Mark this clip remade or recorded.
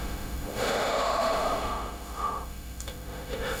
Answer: remade